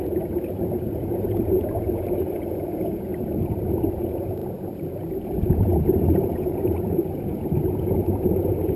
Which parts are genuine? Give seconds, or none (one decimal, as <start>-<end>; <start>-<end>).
3.1-3.8